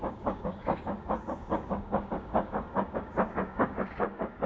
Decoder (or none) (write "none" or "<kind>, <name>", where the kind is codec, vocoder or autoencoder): codec, DAC